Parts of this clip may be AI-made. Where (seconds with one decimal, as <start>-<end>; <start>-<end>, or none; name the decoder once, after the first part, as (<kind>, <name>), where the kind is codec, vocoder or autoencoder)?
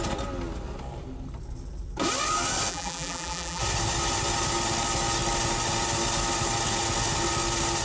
2.7-3.6 (vocoder, BigVGAN v2)